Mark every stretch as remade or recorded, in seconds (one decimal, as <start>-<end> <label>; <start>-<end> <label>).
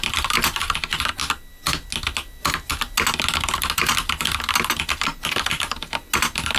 0.0-6.6 recorded